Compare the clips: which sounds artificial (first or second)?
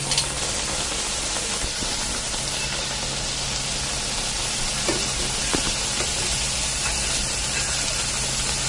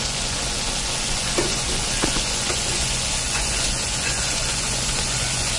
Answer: second